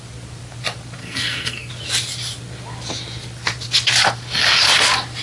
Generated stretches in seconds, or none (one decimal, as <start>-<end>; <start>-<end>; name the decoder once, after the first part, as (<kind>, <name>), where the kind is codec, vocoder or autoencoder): 1.0-1.7 (codec, SNAC)

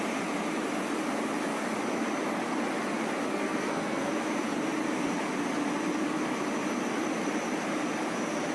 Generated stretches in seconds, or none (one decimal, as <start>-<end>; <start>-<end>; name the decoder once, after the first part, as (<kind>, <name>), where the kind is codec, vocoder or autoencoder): 3.3-4.1 (codec, SNAC)

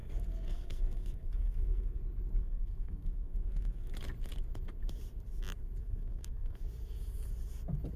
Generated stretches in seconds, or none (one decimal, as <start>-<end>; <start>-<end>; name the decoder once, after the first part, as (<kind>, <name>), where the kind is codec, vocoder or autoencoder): 0.0-2.0 (codec, SNAC); 2.4-3.9; 5.8-6.6

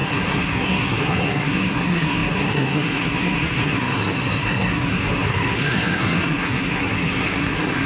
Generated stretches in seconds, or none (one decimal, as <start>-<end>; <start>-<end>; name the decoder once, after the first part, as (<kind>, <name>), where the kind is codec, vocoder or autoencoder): 0.0-7.9 (codec, SNAC)

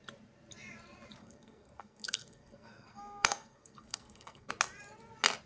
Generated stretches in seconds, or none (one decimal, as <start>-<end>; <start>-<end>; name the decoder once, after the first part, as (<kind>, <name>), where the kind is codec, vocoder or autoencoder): 1.2-4.5 (codec, SNAC)